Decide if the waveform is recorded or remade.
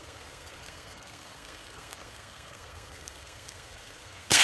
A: remade